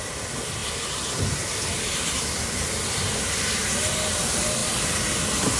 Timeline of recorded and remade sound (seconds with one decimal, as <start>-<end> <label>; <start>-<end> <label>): 0.0-4.6 remade; 4.6-5.6 recorded